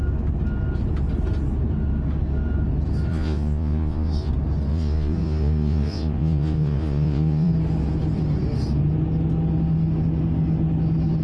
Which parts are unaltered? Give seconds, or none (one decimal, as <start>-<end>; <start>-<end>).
0.0-3.1; 4.3-4.7; 7.5-11.2